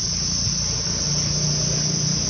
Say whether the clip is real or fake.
real